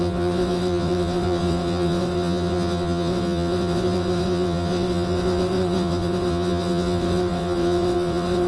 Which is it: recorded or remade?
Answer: remade